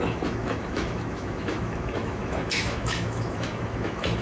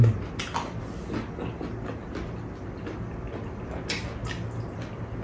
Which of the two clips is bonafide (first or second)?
second